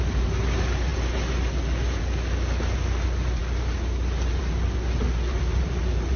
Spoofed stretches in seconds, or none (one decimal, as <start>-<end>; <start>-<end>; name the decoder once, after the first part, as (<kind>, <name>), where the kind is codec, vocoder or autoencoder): 5.3-6.2 (vocoder, BigVGAN v2)